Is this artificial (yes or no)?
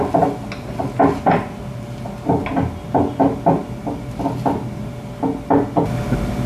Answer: no